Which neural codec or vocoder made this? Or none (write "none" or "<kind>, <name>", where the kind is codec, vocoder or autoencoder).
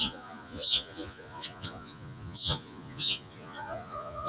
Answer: vocoder, Vocos